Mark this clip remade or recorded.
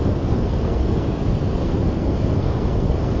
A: remade